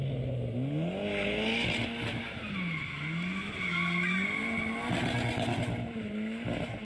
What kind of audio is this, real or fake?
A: real